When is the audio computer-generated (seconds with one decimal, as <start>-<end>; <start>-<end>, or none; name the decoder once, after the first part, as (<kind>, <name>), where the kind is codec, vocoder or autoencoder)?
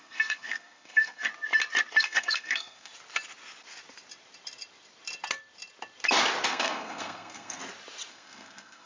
0.0-1.3 (codec, SNAC); 2.0-2.9; 6.5-7.6; 8.1-8.9